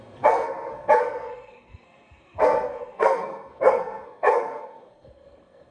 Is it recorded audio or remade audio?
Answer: remade